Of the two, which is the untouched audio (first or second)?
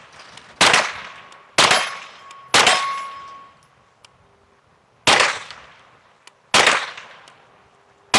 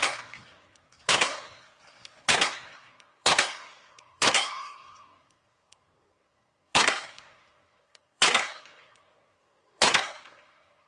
first